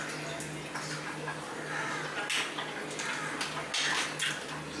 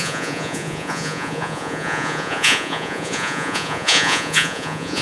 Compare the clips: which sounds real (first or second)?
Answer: first